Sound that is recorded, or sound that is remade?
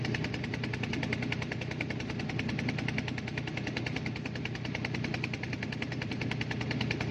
recorded